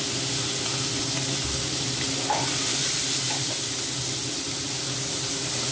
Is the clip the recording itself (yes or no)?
yes